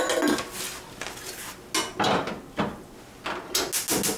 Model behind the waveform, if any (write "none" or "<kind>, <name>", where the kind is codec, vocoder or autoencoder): none